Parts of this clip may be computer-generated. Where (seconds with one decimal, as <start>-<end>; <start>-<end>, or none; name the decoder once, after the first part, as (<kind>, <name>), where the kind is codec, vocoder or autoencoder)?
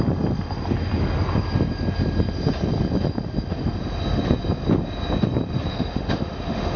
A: 5.7-6.8 (autoencoder, DAC-VAE)